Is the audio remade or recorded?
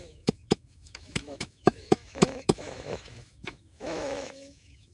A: remade